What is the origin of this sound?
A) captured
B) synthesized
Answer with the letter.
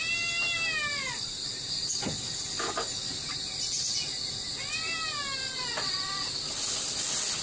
A